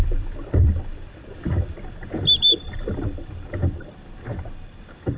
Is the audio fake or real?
fake